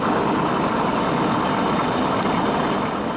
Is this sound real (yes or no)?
yes